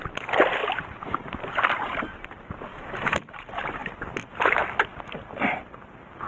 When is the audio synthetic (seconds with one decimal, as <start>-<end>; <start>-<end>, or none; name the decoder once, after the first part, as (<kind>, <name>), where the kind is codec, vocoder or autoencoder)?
2.7-3.2 (autoencoder, DAC-VAE)